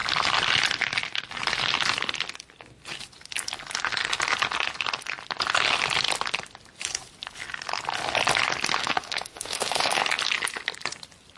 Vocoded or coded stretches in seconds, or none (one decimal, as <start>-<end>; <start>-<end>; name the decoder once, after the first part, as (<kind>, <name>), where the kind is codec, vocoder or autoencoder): 8.8-10.0 (autoencoder, DAC-VAE)